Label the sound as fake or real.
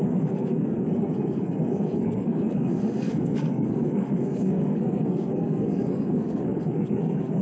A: fake